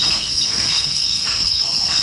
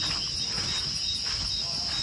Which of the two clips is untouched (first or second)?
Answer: second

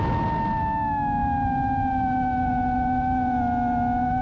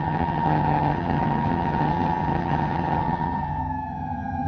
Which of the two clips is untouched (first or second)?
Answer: first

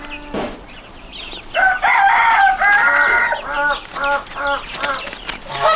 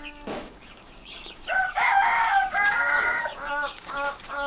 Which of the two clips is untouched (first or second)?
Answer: first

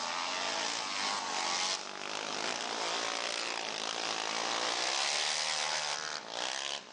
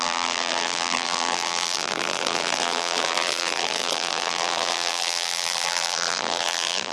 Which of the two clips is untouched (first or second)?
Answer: first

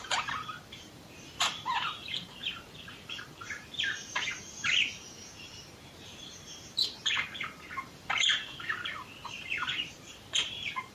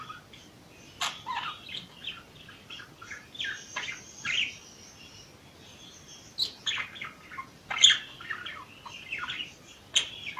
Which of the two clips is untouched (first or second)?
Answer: second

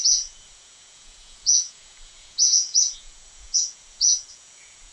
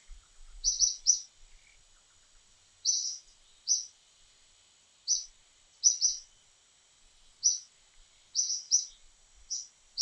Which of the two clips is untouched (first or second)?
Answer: second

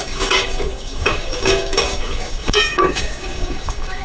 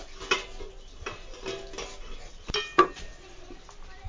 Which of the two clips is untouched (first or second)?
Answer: second